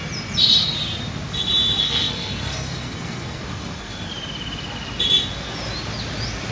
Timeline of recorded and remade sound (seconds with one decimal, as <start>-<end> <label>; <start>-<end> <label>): 0.0-1.8 recorded; 1.8-4.1 remade; 4.1-6.5 recorded